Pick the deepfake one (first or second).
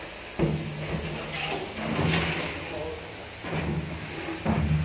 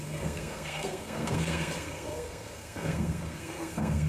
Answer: second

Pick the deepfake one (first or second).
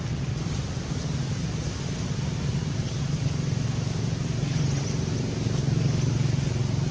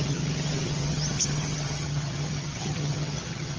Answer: second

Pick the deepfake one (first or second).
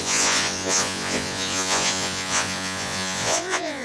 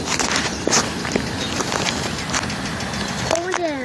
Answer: first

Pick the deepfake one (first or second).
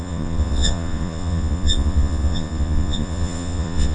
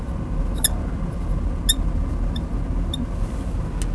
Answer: first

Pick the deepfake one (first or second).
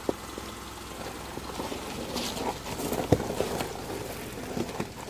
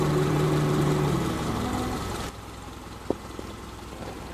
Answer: second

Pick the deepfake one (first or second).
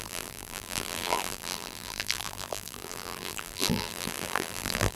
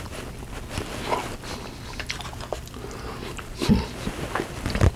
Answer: first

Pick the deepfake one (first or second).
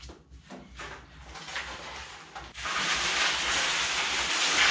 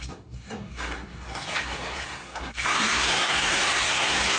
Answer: second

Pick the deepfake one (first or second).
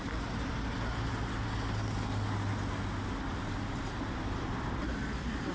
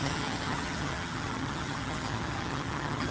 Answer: second